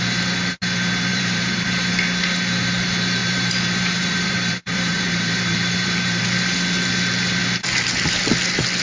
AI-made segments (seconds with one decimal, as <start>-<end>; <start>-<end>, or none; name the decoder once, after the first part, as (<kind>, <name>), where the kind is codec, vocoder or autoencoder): 1.1-1.9 (vocoder, BigVGAN v2); 3.2-6.2